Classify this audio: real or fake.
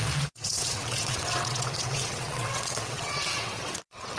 fake